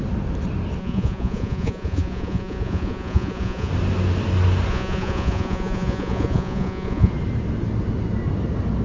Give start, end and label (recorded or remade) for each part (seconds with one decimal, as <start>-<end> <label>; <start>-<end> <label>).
0.0-0.8 recorded; 0.8-3.7 remade; 3.7-4.7 recorded; 4.7-7.1 remade; 7.1-8.8 recorded